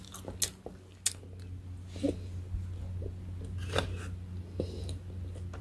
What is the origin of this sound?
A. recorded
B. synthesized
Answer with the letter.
A